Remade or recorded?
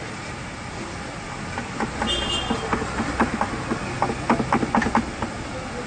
recorded